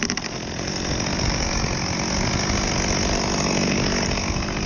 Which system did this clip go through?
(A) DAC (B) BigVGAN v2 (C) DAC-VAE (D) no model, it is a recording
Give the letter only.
D